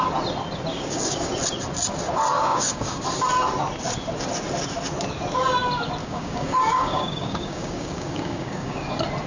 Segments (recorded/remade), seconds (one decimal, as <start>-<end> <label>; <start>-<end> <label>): 0.0-0.7 recorded; 0.7-1.3 remade; 1.3-2.3 recorded; 2.3-3.0 remade; 3.0-6.0 recorded; 6.0-8.9 remade; 8.9-9.3 recorded